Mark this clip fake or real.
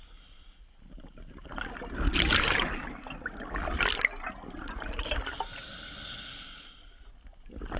real